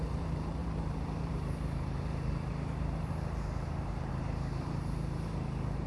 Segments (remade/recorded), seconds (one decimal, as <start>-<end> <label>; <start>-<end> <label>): 0.0-5.9 remade